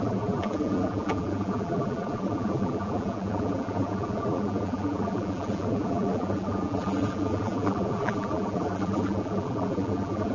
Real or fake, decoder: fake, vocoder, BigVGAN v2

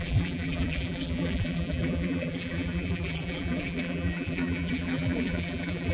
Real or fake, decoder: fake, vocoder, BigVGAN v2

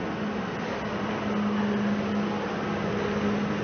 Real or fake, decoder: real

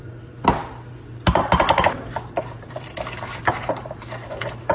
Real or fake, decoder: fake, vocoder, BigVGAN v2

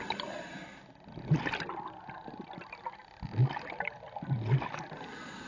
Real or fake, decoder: real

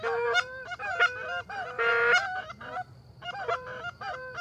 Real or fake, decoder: fake, vocoder, BigVGAN v2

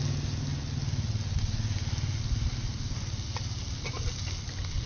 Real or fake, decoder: real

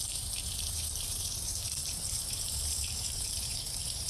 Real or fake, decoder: fake, vocoder, BigVGAN v2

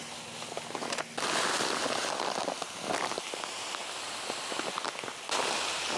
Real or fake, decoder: real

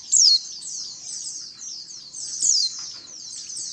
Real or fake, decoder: fake, vocoder, BigVGAN v2